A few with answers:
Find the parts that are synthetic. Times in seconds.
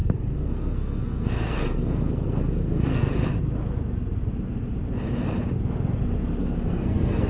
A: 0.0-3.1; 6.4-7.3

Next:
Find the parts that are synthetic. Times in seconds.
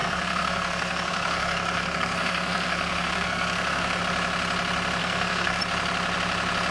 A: 0.0-4.0; 5.0-5.6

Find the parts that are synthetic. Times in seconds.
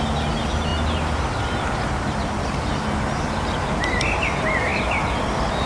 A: none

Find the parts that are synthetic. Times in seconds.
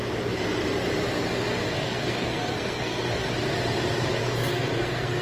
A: 1.6-3.3; 4.2-5.2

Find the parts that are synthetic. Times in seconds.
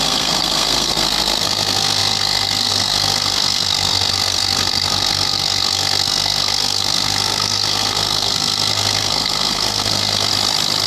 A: 0.0-10.3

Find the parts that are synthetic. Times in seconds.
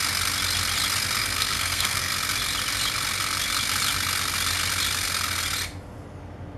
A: 1.2-2.1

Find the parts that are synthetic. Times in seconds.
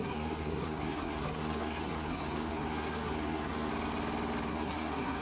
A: 0.0-3.7; 4.5-5.2